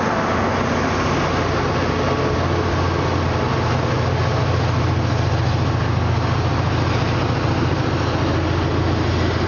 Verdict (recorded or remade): recorded